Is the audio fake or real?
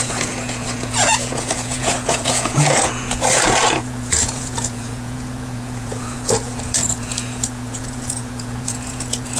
fake